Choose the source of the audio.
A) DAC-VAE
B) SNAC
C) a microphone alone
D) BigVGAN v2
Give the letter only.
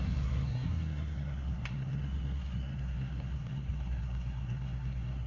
B